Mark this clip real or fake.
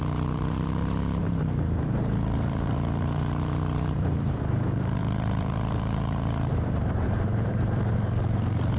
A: fake